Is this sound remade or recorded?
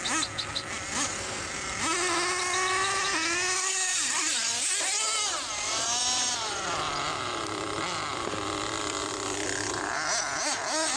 recorded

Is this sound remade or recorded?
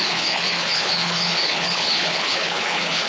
remade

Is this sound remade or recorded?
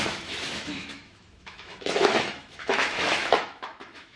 remade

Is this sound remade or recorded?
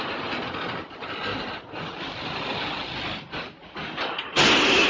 recorded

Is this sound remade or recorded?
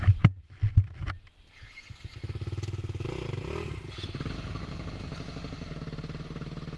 recorded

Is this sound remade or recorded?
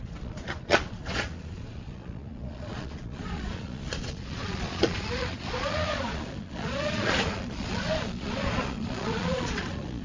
remade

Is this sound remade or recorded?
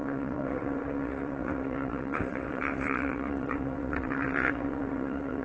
remade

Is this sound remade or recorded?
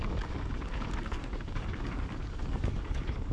remade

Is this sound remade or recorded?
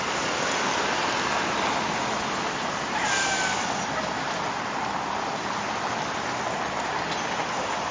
recorded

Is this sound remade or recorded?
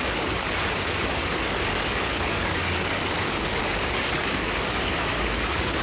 remade